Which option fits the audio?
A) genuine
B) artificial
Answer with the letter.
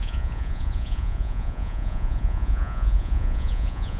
B